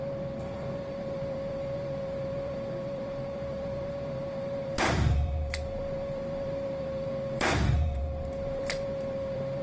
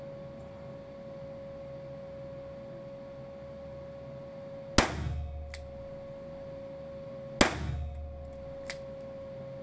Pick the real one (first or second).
second